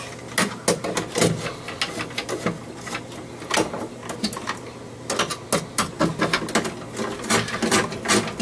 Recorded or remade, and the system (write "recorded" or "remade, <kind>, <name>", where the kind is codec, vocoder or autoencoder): recorded